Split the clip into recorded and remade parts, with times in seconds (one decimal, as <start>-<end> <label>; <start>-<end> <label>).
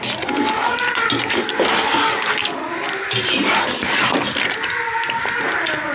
0.0-5.9 recorded